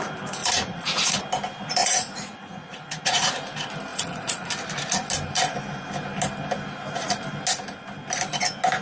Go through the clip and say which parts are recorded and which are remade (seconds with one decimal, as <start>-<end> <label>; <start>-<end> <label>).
0.0-0.4 recorded; 0.4-1.2 remade; 1.2-1.8 recorded; 1.8-3.3 remade; 3.3-3.9 recorded; 3.9-4.5 remade; 4.5-8.8 recorded